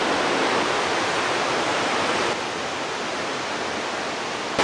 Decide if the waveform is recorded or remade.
recorded